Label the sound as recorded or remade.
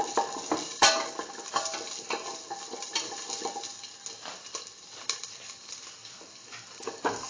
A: recorded